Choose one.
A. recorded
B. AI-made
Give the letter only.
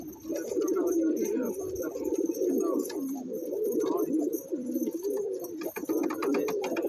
A